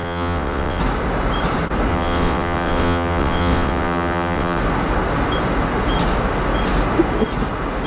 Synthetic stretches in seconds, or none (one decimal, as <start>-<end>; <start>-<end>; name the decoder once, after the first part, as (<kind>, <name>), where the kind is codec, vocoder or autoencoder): 0.0-0.8 (vocoder, WaveNeXt); 1.9-4.6